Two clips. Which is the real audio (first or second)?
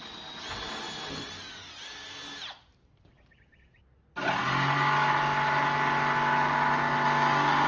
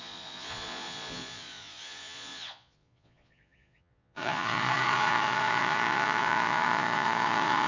first